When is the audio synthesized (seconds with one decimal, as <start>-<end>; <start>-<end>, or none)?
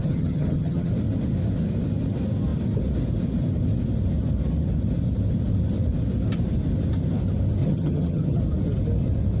0.0-0.9; 7.6-8.4